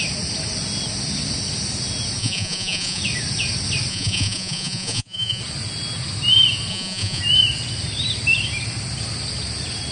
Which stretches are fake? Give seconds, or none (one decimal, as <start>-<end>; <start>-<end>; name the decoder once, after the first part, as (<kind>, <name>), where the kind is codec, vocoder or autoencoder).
2.2-3.0 (vocoder, Vocos); 3.9-5.4; 6.7-7.2